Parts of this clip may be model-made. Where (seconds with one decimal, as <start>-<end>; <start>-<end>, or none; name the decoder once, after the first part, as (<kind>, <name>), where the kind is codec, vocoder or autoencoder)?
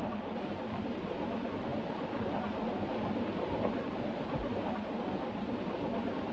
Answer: 3.3-5.8 (vocoder, BigVGAN v2)